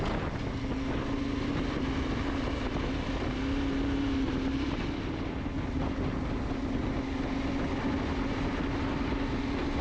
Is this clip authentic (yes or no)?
yes